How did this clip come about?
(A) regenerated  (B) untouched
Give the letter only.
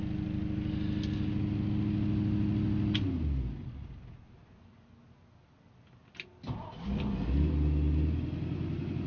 B